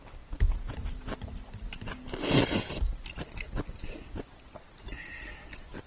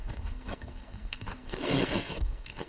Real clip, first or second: first